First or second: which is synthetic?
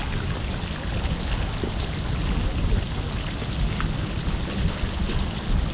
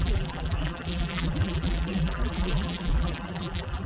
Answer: second